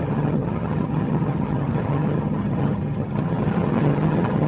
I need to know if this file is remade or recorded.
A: remade